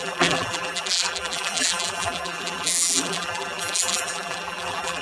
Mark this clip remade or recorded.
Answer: remade